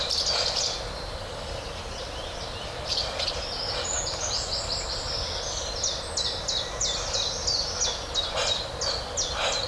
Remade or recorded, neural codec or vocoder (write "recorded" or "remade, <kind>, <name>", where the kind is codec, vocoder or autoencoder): recorded